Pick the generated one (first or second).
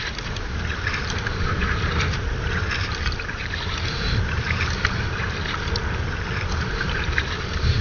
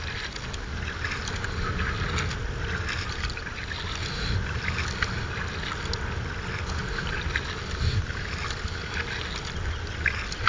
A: first